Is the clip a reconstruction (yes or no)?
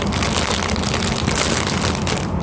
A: no